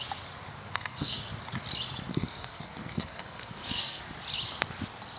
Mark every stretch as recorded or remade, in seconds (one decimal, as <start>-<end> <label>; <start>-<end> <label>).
0.0-0.6 recorded; 0.6-1.2 remade; 1.2-2.1 recorded; 2.1-4.0 remade; 4.0-5.2 recorded